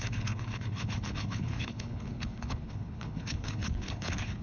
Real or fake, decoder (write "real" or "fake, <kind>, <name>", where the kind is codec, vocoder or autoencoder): fake, codec, HILCodec